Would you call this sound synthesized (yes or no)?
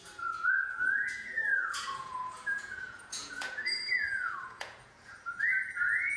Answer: yes